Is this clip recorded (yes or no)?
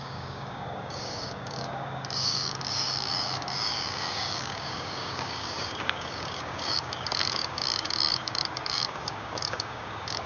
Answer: no